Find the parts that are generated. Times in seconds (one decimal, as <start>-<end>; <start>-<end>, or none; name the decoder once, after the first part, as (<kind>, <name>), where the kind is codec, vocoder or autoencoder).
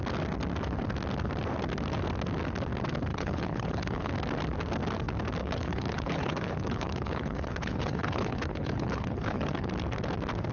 3.1-4.1 (codec, HILCodec); 5.4-9.7